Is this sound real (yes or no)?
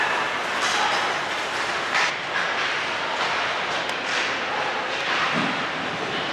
yes